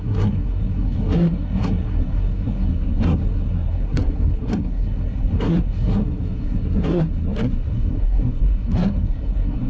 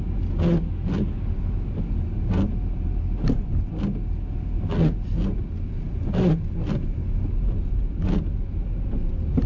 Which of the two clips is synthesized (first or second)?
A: first